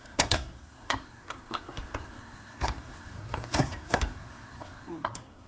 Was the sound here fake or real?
fake